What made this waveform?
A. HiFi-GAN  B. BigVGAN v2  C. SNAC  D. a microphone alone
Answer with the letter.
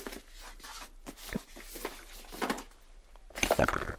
D